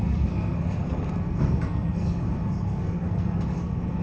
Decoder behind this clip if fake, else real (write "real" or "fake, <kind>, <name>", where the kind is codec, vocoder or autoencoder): fake, codec, SNAC